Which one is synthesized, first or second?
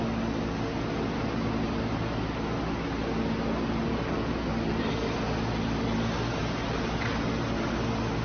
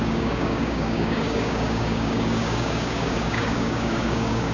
second